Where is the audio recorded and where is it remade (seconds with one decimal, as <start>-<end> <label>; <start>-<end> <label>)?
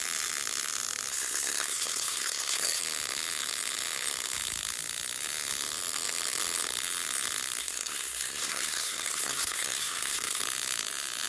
0.0-1.1 recorded; 1.1-2.8 remade; 2.8-7.6 recorded; 7.6-10.4 remade; 10.4-11.3 recorded